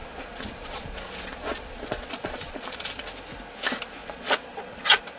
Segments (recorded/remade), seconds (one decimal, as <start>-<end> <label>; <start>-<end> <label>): 0.0-3.1 remade; 3.1-4.0 recorded; 4.0-5.2 remade